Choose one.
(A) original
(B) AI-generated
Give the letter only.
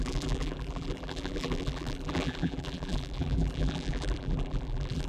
B